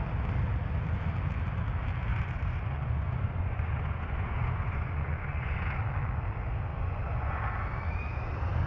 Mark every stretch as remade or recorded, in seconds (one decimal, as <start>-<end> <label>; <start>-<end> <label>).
0.0-2.1 recorded; 2.1-5.8 remade; 5.8-6.7 recorded; 6.7-7.4 remade; 7.4-8.7 recorded